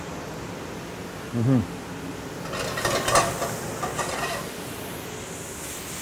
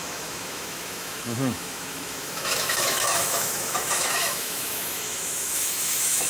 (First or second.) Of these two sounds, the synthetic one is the second